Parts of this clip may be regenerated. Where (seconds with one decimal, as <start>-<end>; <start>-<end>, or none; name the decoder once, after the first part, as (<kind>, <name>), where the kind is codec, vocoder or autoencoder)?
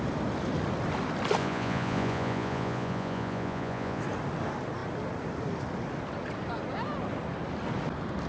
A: 1.4-4.0 (vocoder, Vocos)